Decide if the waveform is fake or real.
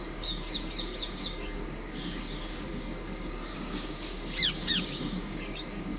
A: fake